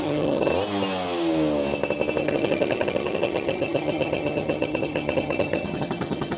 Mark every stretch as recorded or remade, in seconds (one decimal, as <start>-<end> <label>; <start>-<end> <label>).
0.0-0.5 remade; 0.5-2.2 recorded; 2.2-6.4 remade